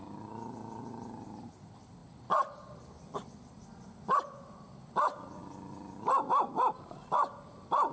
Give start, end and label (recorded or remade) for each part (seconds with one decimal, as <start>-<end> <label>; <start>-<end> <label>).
0.0-2.0 recorded; 2.0-2.8 remade; 2.8-7.9 recorded